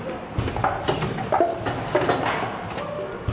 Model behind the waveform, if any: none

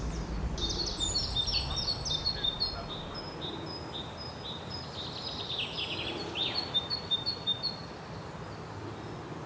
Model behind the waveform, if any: none